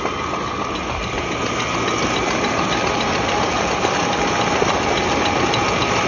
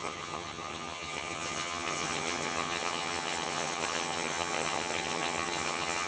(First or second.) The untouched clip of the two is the first